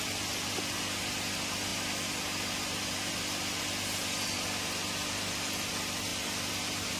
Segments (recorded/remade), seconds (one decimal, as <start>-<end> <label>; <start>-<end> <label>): 0.0-7.0 recorded